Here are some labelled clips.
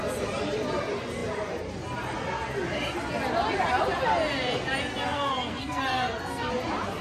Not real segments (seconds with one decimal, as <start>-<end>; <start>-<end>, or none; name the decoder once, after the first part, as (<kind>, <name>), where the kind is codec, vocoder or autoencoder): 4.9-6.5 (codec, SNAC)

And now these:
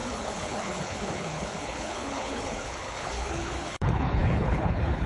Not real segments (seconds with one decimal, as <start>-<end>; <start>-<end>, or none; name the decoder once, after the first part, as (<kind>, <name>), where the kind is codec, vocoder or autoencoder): 0.0-5.1 (codec, HILCodec)

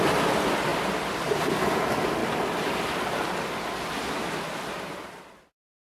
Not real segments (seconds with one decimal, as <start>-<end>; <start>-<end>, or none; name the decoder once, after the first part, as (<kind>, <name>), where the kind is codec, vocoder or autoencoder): 0.7-1.3 (vocoder, BigVGAN v2)

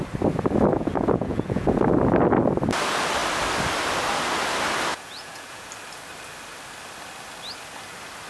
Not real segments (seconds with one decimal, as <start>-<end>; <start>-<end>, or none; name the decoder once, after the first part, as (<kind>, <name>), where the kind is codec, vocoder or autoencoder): 0.7-1.7 (vocoder, Vocos); 4.9-5.7

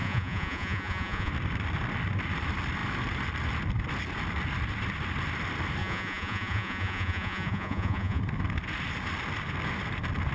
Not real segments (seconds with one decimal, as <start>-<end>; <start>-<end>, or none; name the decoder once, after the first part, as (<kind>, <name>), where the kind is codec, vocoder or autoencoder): 0.0-1.3 (vocoder, Vocos); 5.8-8.2

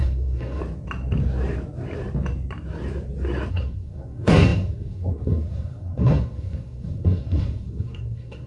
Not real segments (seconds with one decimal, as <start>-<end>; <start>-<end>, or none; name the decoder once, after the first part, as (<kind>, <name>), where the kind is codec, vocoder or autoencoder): 0.0-0.6 (codec, SNAC); 3.5-8.5